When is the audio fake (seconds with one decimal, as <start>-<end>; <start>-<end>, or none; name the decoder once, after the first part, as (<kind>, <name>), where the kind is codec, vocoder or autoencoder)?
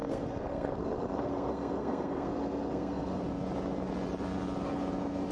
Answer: 0.0-3.2 (codec, SNAC)